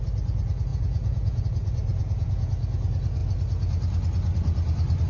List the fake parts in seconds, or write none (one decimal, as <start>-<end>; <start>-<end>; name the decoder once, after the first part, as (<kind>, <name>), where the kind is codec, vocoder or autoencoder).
0.7-1.4 (vocoder, Vocos); 1.9-2.5